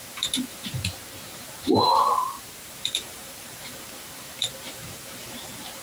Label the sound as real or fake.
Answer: fake